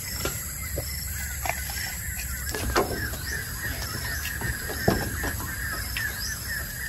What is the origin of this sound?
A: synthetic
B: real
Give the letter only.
B